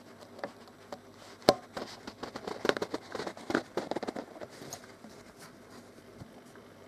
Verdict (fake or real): real